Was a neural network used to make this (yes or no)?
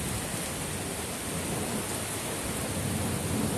no